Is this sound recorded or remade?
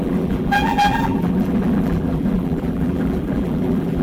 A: remade